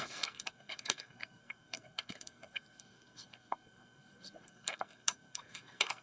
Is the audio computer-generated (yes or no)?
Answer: yes